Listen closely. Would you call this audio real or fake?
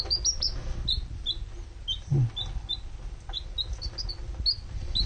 real